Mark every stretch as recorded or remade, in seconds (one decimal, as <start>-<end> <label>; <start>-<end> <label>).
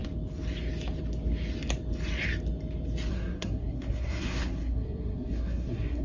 0.0-3.1 recorded; 3.1-6.0 remade